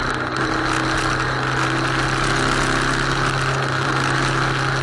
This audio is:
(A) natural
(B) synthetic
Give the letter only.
A